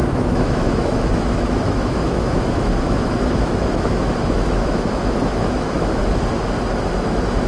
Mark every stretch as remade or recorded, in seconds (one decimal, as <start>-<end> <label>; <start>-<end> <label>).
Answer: 0.0-6.0 remade; 6.0-6.9 recorded; 6.9-7.5 remade